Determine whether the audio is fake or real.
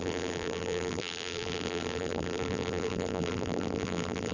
fake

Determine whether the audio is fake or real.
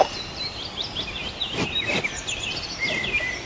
real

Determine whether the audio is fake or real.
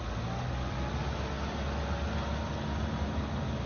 real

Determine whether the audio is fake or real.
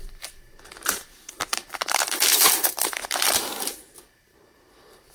fake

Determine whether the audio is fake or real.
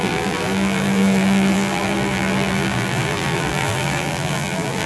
fake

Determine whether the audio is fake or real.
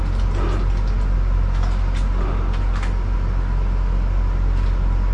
real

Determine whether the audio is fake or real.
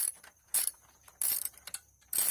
fake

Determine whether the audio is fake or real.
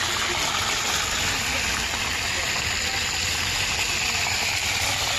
real